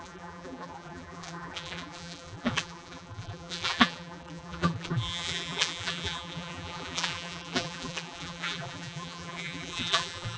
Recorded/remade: remade